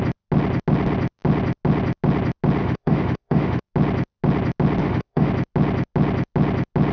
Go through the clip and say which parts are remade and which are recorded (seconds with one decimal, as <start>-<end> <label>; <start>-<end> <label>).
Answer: 0.0-2.6 recorded; 2.6-3.6 remade; 3.6-4.8 recorded; 4.8-5.3 remade; 5.3-6.9 recorded

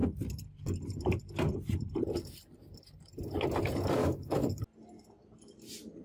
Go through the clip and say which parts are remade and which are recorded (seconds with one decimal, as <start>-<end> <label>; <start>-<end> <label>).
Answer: 0.0-4.0 recorded; 4.0-4.6 remade; 4.6-6.0 recorded

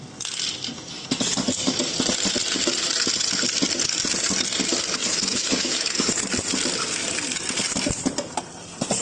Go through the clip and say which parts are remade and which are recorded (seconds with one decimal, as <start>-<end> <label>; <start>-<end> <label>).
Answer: 0.0-5.0 recorded; 5.0-6.1 remade; 6.1-9.0 recorded

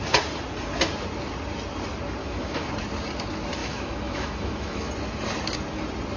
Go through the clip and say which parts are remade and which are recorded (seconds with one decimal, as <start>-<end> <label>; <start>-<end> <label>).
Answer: 0.0-2.2 recorded; 2.2-2.7 remade; 2.7-3.6 recorded; 3.6-4.9 remade; 4.9-6.2 recorded

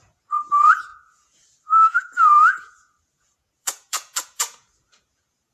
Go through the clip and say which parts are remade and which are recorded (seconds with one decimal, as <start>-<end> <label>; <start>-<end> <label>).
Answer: 0.0-5.5 remade

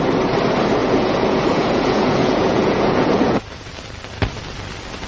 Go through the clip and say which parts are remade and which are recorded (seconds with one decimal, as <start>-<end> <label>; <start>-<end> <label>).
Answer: 0.0-0.8 recorded; 0.8-3.7 remade; 3.7-5.1 recorded

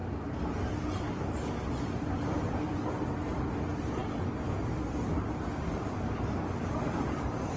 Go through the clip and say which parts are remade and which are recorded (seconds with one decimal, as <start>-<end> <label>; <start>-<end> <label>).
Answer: 0.0-1.0 recorded; 1.0-4.0 remade; 4.0-5.1 recorded; 5.1-7.6 remade